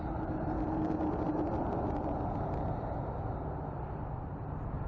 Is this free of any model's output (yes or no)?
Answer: yes